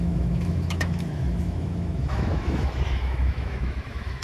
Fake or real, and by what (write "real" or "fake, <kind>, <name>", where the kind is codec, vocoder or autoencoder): fake, autoencoder, DAC-VAE